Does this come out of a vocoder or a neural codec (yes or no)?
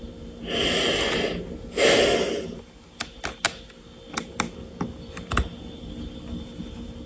no